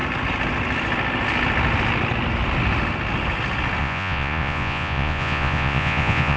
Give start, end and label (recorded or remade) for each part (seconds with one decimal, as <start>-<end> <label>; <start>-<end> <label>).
0.0-3.8 recorded; 3.8-6.4 remade